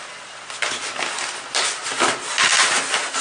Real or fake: real